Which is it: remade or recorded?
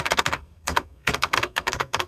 remade